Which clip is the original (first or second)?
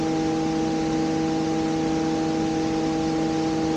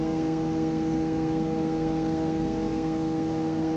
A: first